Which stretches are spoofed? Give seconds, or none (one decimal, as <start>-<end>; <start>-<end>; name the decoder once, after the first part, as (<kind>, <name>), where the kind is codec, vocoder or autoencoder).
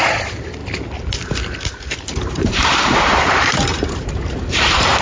0.0-0.6 (vocoder, BigVGAN v2); 2.3-5.0